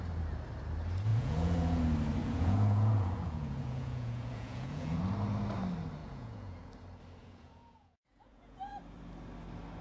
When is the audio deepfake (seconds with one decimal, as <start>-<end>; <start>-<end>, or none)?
1.1-1.8; 2.2-5.0; 6.0-6.7; 7.2-8.8